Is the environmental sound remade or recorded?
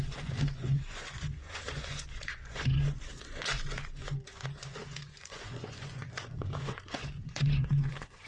remade